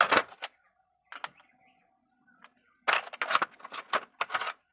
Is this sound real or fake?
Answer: real